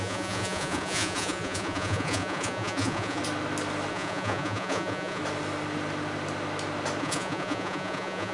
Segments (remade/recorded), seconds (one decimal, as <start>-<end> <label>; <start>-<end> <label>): 0.0-3.2 remade; 3.2-3.9 recorded; 3.9-5.2 remade; 5.2-7.0 recorded; 7.0-8.3 remade